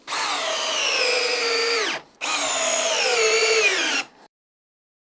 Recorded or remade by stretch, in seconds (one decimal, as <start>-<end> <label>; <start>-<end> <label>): 0.0-3.4 recorded; 3.4-4.7 remade; 4.7-5.2 recorded